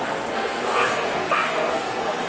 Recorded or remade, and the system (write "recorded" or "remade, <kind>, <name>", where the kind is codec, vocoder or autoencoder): remade, codec, SNAC